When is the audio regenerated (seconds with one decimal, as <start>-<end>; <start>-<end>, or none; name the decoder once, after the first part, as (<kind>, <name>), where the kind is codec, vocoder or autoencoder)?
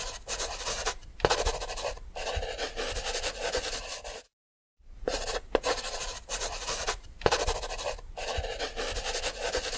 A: 4.3-8.6 (vocoder, BigVGAN v2)